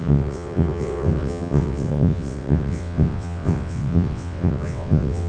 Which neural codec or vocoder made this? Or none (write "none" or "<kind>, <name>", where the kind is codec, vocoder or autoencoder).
vocoder, WaveNeXt